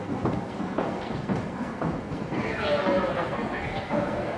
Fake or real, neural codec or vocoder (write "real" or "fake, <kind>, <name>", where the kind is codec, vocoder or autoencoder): fake, codec, SNAC